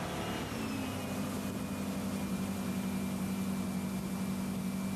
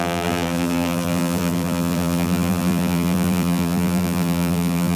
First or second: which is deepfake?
second